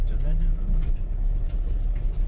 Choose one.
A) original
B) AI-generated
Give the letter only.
A